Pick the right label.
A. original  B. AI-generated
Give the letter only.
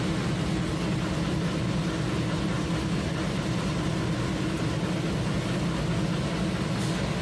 A